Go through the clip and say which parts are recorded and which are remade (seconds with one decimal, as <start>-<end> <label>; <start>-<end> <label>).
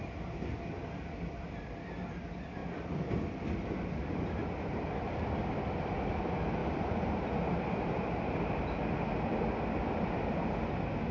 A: 0.0-6.6 recorded; 6.6-8.8 remade; 8.8-11.1 recorded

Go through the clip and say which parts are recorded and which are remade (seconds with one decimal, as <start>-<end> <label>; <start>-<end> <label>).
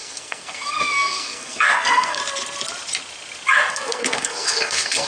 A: 0.0-2.2 remade; 2.2-3.7 recorded; 3.7-5.1 remade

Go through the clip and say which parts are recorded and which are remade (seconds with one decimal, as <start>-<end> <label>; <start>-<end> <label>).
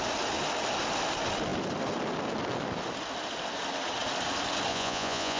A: 0.0-4.7 recorded; 4.7-5.4 remade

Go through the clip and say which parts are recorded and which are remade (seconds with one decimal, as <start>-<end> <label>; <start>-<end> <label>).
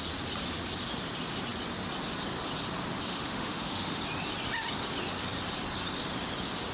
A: 0.0-3.1 recorded; 3.1-4.0 remade; 4.0-6.7 recorded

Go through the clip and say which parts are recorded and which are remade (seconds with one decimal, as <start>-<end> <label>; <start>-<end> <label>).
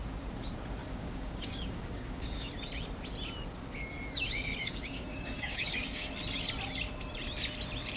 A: 0.0-0.8 recorded; 0.8-2.5 remade; 2.5-4.6 recorded; 4.6-6.1 remade; 6.1-8.0 recorded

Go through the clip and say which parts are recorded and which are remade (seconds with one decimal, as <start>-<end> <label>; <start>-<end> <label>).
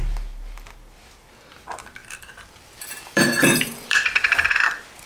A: 0.0-2.0 recorded; 2.0-5.1 remade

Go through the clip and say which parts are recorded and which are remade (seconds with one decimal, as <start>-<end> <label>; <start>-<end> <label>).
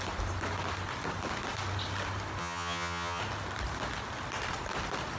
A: 0.0-2.4 recorded; 2.4-3.2 remade; 3.2-5.2 recorded